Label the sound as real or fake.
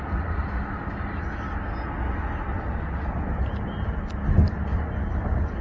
real